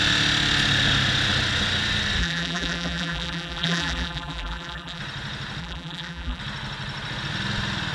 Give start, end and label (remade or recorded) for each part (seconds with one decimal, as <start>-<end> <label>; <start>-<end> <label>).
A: 0.0-2.2 recorded; 2.2-5.0 remade; 5.0-5.6 recorded; 5.6-6.4 remade; 6.4-7.9 recorded